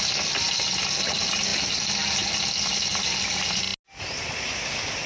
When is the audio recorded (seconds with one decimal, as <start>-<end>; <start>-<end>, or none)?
0.0-5.1